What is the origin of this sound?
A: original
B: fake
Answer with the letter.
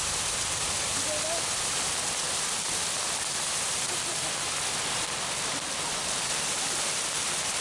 B